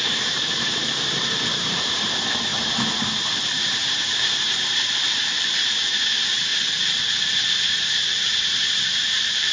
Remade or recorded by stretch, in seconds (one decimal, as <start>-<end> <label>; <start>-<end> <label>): 0.0-2.5 remade; 2.5-3.4 recorded; 3.4-6.5 remade; 6.5-8.8 recorded; 8.8-9.5 remade